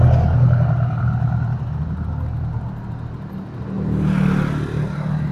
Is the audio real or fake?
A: real